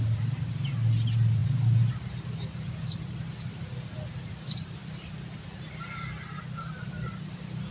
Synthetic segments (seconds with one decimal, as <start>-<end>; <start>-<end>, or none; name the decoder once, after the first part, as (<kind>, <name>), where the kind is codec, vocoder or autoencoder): none